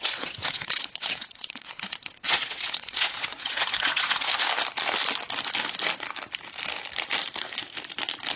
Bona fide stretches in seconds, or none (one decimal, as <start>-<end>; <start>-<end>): 4.3-8.4